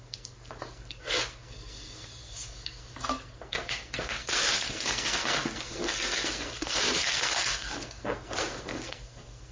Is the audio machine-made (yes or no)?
yes